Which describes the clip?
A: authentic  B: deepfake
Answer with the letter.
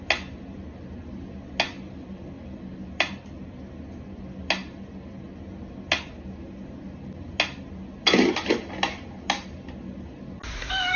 A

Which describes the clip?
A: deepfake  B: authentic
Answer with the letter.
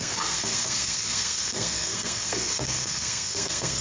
A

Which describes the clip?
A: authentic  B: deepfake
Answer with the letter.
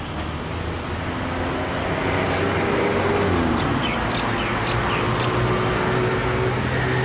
A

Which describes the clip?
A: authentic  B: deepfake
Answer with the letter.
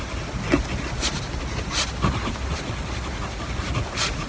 A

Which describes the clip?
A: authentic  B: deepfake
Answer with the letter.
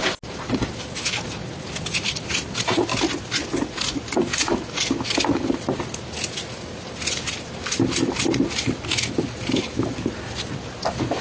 A